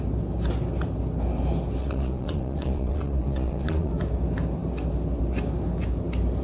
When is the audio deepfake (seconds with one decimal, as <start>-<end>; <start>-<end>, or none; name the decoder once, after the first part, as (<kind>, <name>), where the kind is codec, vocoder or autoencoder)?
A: 1.8-3.9 (vocoder, Vocos)